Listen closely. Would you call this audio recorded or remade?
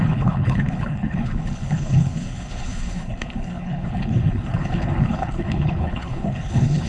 remade